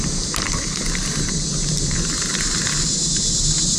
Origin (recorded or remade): recorded